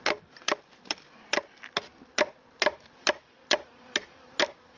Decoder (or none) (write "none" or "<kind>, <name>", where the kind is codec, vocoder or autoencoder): none